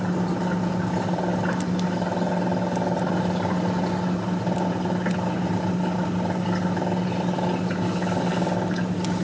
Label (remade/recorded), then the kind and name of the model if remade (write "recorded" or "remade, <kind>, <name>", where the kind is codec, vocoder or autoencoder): recorded